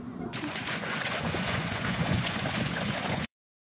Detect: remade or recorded remade